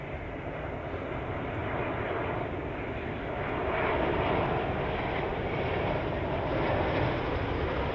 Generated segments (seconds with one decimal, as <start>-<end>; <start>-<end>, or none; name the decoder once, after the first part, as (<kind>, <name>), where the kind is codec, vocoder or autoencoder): none